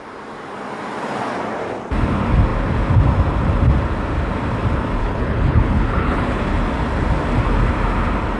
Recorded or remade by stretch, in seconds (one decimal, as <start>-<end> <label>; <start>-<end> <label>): 0.0-5.0 recorded; 5.0-6.4 remade; 6.4-8.4 recorded